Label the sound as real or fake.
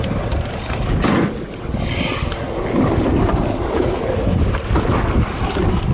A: real